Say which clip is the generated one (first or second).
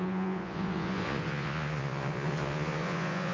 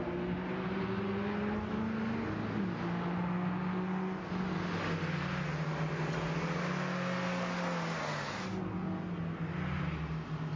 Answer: first